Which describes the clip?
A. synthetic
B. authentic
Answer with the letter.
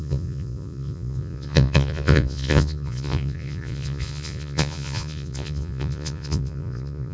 A